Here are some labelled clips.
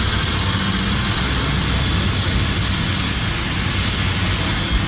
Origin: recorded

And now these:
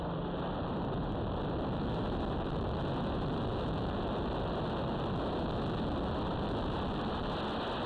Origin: recorded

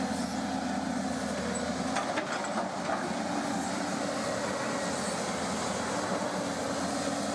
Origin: recorded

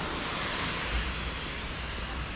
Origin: recorded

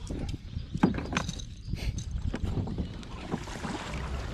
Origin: remade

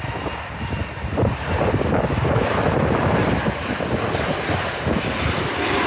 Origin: recorded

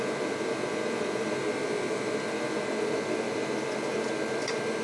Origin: recorded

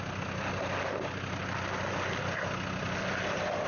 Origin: recorded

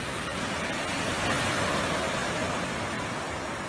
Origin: recorded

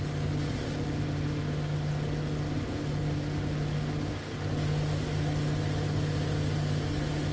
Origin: recorded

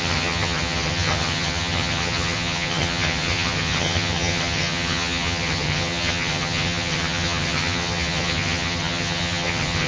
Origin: remade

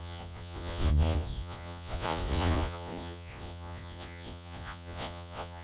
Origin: remade